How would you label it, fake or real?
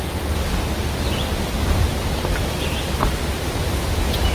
real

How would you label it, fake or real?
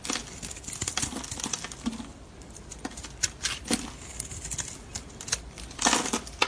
real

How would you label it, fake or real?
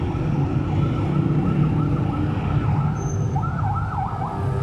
real